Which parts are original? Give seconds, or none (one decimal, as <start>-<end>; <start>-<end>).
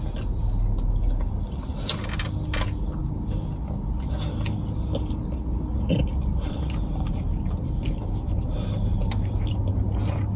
0.0-10.4